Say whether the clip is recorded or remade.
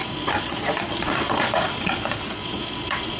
remade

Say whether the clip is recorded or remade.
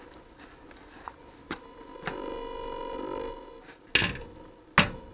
recorded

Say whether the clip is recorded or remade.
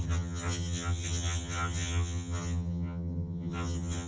remade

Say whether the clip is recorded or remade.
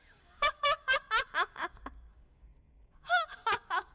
remade